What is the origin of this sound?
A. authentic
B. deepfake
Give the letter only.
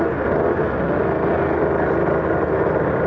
A